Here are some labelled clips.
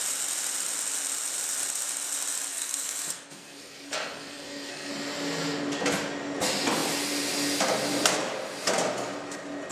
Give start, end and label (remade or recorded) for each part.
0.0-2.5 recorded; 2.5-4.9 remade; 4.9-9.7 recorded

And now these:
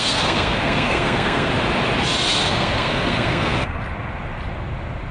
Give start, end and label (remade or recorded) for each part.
0.0-1.5 remade; 1.5-2.5 recorded; 2.5-3.8 remade; 3.8-5.1 recorded

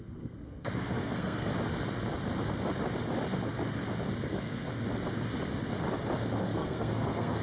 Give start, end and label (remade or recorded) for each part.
0.0-1.5 remade; 1.5-4.3 recorded; 4.3-4.7 remade; 4.7-6.4 recorded; 6.4-7.4 remade

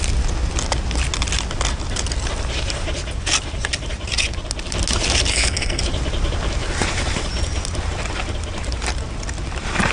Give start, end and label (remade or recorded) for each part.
0.0-5.3 recorded; 5.3-5.8 remade; 5.8-9.9 recorded

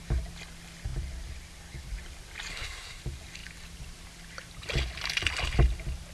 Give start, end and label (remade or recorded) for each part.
0.0-2.5 recorded; 2.5-3.0 remade; 3.0-6.1 recorded